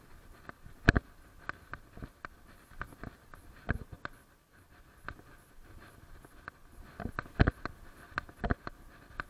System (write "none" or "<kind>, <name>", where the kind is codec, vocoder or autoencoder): none